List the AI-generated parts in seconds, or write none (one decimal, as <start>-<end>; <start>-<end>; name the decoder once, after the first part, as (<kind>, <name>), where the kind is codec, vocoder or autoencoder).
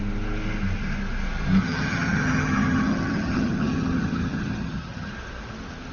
1.6-5.1 (vocoder, HiFi-GAN)